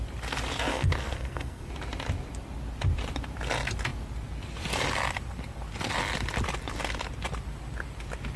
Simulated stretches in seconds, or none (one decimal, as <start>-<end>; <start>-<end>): 0.7-1.7